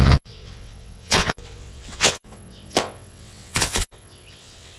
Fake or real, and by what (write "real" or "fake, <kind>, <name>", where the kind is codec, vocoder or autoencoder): fake, vocoder, WaveNeXt